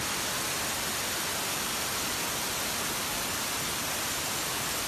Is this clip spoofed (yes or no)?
no